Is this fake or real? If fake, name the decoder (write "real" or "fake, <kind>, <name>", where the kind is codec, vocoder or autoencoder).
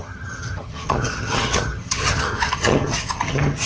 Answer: fake, vocoder, HiFi-GAN